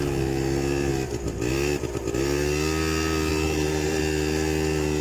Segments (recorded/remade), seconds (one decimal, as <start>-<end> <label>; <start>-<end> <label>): 0.0-3.3 recorded; 3.3-4.0 remade; 4.0-5.0 recorded